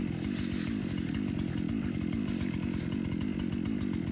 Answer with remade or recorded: remade